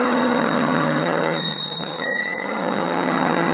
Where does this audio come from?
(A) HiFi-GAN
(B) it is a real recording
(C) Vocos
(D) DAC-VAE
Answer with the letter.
A